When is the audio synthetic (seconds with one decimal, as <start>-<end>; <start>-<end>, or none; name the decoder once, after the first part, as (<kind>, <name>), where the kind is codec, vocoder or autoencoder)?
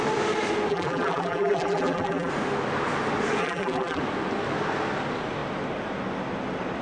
0.7-2.3 (vocoder, BigVGAN v2); 3.4-4.0